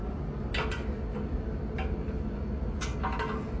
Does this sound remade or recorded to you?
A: recorded